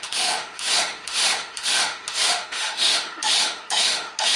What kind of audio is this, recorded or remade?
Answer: remade